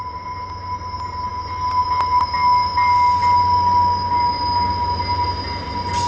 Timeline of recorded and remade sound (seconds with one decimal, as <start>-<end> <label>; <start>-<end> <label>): 0.0-6.1 recorded